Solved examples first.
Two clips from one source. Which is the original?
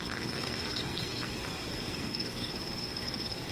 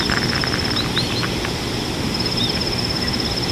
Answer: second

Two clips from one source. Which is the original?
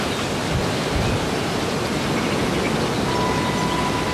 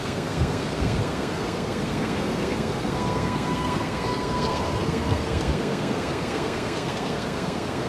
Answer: first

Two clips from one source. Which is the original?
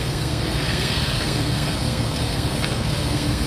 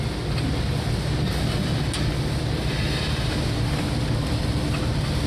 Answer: second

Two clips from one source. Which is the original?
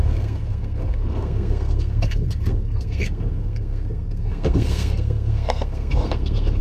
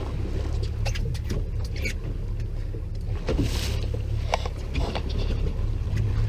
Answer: second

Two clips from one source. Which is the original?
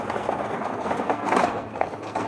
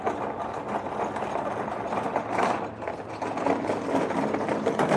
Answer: second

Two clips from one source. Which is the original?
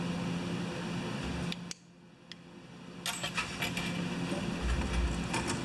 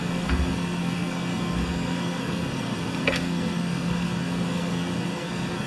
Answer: first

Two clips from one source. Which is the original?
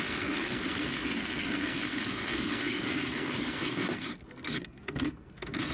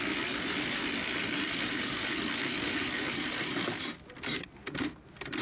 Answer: second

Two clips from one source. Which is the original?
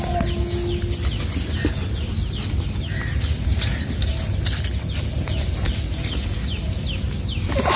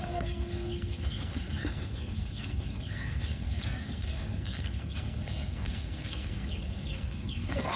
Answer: first